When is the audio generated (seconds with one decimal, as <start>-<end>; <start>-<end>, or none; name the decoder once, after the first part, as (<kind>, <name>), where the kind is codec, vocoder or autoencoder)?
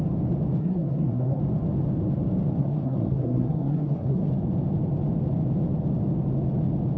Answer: 0.6-1.4 (codec, SNAC); 2.6-4.3